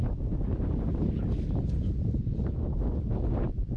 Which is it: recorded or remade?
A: recorded